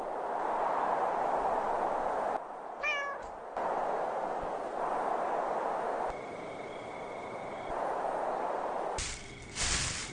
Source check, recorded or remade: recorded